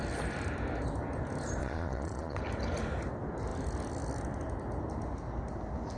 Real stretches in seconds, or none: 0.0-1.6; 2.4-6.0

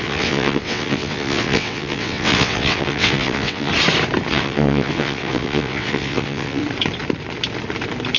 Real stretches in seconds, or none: 3.7-4.3; 6.6-8.2

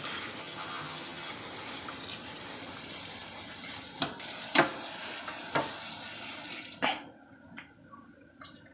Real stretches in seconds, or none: 0.0-0.4; 1.3-8.7

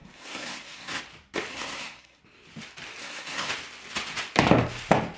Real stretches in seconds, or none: 1.0-1.5; 2.2-3.0; 3.5-5.2